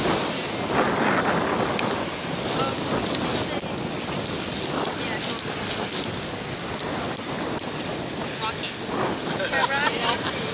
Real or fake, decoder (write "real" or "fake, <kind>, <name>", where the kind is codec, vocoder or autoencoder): real